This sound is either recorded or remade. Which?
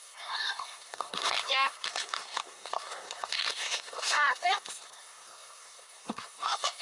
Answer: remade